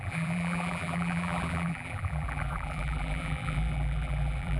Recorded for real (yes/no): no